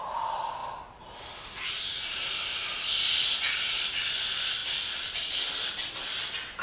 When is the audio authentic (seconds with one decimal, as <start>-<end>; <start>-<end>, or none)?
0.0-6.6